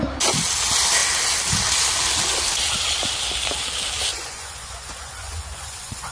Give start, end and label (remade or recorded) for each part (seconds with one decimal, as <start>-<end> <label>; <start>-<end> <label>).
0.0-4.1 recorded; 4.1-6.1 remade